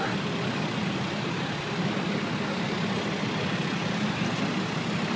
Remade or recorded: recorded